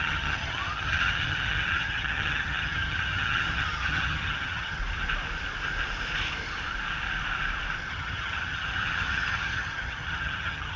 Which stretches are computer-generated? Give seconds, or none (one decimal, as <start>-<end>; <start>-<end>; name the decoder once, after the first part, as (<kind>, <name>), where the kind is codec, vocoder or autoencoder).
0.0-4.8 (vocoder, HiFi-GAN); 7.9-10.8